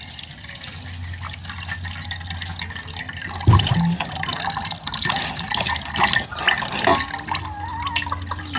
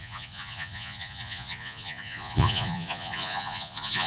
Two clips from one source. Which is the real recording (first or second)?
first